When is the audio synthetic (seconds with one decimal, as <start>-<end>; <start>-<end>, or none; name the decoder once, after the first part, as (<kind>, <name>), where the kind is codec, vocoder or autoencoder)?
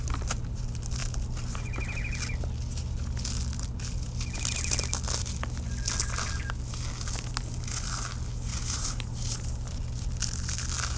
8.5-9.8 (vocoder, BigVGAN v2)